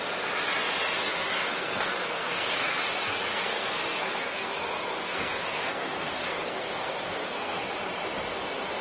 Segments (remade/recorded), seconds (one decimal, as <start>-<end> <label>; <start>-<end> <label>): 0.0-1.4 recorded; 1.4-2.8 remade; 2.8-3.3 recorded; 3.3-7.6 remade; 7.6-8.8 recorded